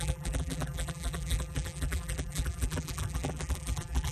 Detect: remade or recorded remade